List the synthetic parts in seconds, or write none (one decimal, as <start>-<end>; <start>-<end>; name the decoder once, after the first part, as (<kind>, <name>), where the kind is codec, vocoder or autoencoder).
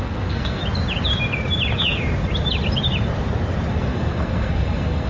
0.0-0.6 (codec, SNAC); 3.7-5.1